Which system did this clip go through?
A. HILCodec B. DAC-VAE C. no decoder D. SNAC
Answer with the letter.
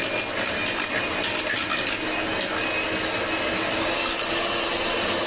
C